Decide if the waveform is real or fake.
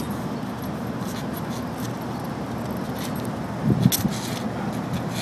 real